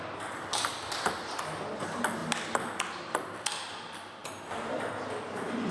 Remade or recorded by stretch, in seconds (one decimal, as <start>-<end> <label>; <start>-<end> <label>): 0.0-5.7 recorded